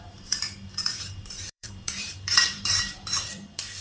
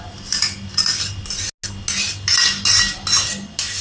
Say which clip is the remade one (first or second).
first